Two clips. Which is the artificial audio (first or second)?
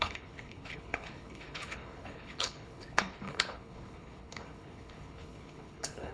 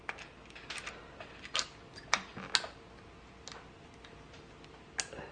first